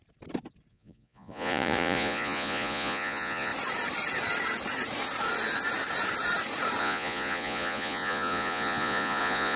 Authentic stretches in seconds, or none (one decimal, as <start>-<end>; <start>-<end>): 0.0-0.7; 3.5-6.8